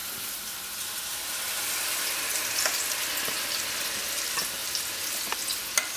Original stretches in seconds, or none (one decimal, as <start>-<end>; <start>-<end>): 0.0-6.0